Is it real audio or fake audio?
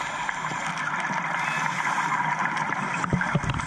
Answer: real